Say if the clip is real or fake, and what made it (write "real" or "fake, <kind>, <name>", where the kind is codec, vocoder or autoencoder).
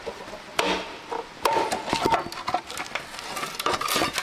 real